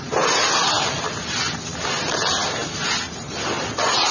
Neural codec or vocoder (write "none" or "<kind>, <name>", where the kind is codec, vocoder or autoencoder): none